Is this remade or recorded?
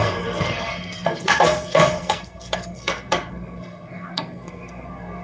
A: remade